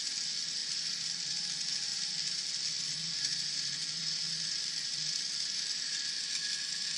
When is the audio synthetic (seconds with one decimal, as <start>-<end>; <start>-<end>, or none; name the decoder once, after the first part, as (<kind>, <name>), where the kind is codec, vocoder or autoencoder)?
0.6-1.3 (vocoder, BigVGAN v2); 1.9-6.1